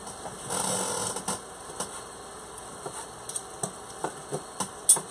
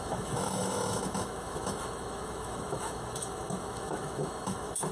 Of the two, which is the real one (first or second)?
first